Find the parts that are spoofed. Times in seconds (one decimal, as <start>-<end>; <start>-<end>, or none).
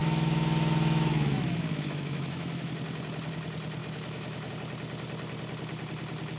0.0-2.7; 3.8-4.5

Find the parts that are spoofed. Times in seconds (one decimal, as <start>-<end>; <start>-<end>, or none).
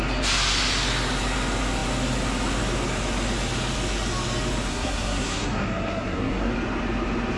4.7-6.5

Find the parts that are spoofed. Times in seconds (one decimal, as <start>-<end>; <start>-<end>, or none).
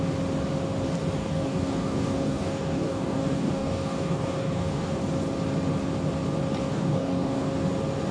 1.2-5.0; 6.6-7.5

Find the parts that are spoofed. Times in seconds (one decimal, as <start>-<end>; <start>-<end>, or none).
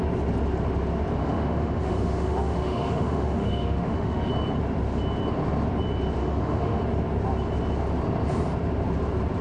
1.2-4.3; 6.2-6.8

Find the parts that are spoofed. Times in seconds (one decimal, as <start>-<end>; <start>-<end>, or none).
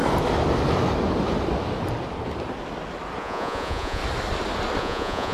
3.2-4.0; 4.8-5.3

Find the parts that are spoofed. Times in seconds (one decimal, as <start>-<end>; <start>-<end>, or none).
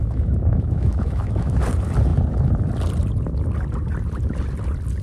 0.0-1.6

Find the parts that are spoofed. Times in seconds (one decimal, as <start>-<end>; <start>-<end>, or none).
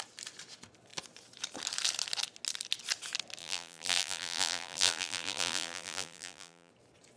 3.4-6.7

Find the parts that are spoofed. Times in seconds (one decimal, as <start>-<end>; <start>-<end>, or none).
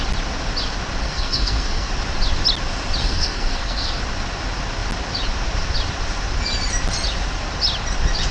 1.0-1.9; 3.0-4.0